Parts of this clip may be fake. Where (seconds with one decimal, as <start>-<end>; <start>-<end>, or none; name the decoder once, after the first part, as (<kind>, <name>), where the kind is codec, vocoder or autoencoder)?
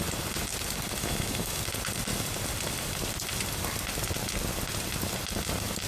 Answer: 1.0-1.6 (autoencoder, DAC-VAE)